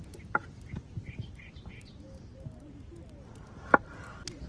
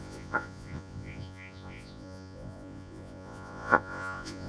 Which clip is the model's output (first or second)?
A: second